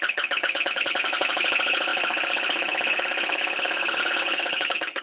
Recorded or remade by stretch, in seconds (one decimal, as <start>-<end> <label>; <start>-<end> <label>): 0.0-5.0 remade